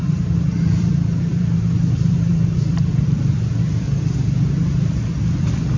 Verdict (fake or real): fake